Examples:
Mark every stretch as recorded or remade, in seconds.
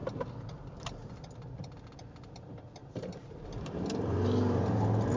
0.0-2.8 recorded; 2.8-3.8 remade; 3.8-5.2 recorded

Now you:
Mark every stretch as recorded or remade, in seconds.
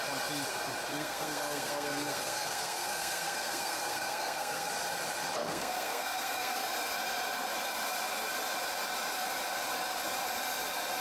0.0-0.9 recorded; 0.9-4.7 remade; 4.7-5.4 recorded; 5.4-6.6 remade; 6.6-11.0 recorded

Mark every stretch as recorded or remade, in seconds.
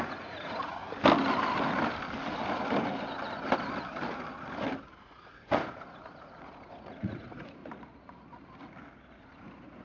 0.0-0.8 remade; 0.8-5.0 recorded; 5.0-7.6 remade; 7.6-9.2 recorded; 9.2-9.8 remade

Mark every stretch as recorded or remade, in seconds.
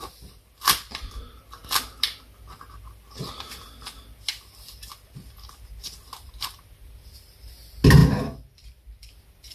0.0-8.0 recorded; 8.0-9.1 remade; 9.1-9.5 recorded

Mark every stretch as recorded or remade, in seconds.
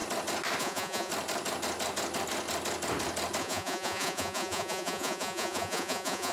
0.0-0.6 recorded; 0.6-1.1 remade; 1.1-3.4 recorded; 3.4-6.3 remade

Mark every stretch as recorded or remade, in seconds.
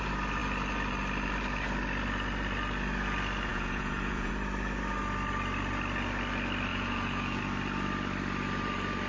0.0-3.5 recorded; 3.5-4.3 remade; 4.3-6.7 recorded; 6.7-7.4 remade; 7.4-9.1 recorded